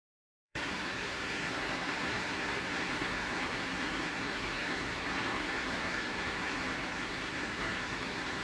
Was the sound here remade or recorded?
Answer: remade